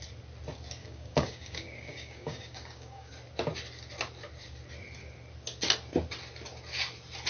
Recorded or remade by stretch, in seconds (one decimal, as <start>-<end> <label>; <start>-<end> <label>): 0.0-0.8 recorded; 0.8-3.1 remade; 3.1-7.3 recorded